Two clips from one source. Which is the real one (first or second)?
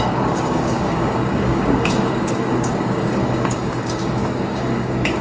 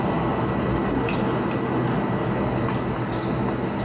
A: second